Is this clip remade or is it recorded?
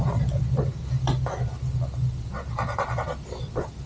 recorded